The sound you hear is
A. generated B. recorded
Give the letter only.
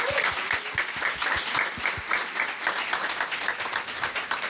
B